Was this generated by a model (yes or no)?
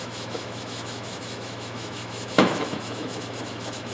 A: yes